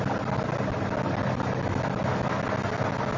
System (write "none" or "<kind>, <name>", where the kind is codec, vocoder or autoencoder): none